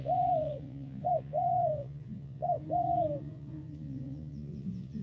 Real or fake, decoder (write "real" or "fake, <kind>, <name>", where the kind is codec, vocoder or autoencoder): fake, vocoder, Vocos